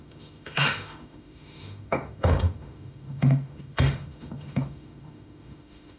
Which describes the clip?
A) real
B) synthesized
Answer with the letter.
B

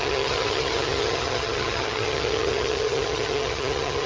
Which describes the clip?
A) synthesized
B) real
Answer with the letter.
A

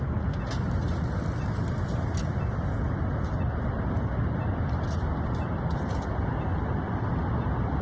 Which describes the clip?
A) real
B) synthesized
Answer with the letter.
A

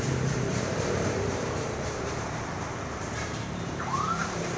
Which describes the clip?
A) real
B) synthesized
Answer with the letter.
B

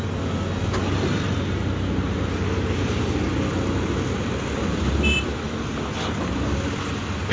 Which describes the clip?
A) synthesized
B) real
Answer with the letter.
B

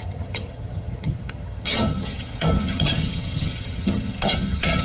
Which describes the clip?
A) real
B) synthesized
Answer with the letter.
B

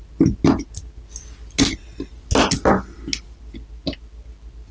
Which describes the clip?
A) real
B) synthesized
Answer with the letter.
A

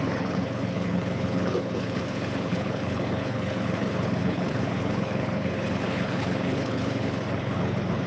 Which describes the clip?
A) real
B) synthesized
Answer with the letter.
B